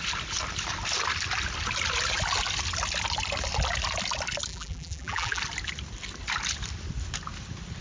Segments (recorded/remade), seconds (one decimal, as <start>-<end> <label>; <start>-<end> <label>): 0.0-4.5 recorded; 4.5-5.4 remade; 5.4-7.8 recorded